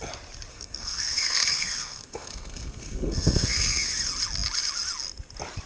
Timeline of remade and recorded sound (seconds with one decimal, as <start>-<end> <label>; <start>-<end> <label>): 0.0-0.5 recorded; 0.5-3.9 remade; 3.9-5.7 recorded